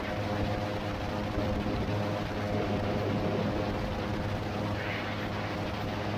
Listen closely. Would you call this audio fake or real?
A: real